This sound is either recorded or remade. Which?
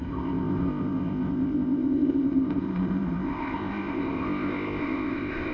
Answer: remade